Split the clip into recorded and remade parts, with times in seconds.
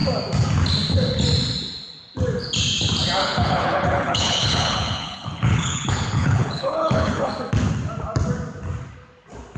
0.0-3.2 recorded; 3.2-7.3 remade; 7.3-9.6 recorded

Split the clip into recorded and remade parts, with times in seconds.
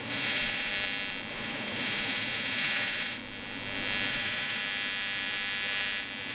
0.0-0.7 remade; 0.7-1.3 recorded; 1.3-3.2 remade; 3.2-4.1 recorded; 4.1-4.6 remade; 4.6-6.3 recorded